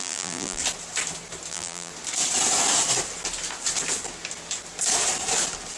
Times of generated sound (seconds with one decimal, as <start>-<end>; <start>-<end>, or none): 0.0-0.6; 1.5-1.9